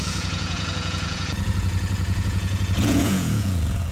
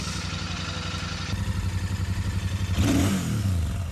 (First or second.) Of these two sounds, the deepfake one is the first